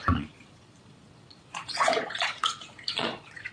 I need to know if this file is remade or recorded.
remade